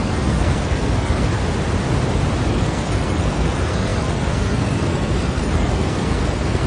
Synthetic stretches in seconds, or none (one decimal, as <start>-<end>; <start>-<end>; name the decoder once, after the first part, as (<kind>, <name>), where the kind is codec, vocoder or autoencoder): 0.0-1.4 (codec, SNAC); 2.5-6.7